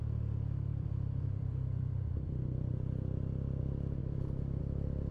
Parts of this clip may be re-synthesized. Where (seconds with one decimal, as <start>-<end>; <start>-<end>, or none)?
0.7-3.6; 4.0-4.6